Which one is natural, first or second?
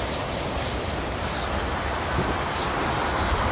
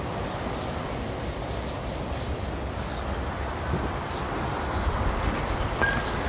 second